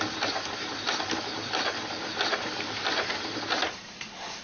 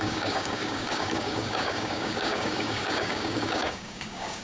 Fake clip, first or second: second